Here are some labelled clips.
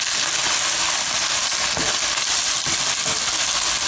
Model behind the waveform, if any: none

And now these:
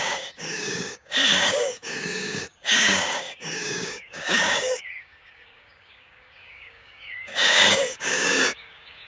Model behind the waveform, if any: codec, DAC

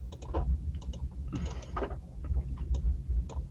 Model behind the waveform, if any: none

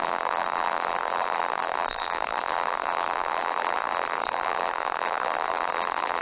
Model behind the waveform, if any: vocoder, BigVGAN v2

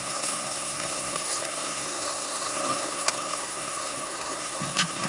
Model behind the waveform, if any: codec, SNAC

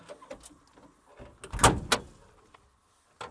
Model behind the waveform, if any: none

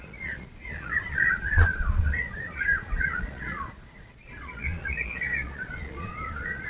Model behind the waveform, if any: vocoder, Vocos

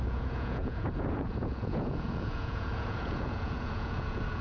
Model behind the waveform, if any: vocoder, Vocos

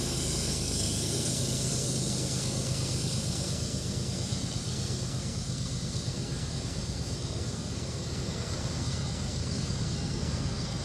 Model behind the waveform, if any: codec, SNAC